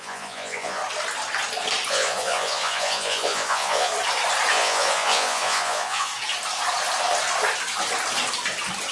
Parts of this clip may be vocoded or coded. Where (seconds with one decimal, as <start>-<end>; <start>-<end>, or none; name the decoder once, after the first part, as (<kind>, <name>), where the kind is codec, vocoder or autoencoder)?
0.0-0.8 (vocoder, Vocos); 1.9-3.9; 4.5-6.1

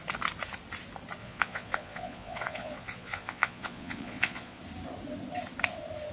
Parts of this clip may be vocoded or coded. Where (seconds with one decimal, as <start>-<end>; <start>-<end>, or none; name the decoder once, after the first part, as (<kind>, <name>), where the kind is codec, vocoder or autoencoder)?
1.2-4.6 (vocoder, Vocos)